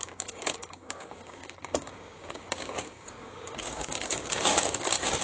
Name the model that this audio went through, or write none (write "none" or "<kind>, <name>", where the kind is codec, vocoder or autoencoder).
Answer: codec, DAC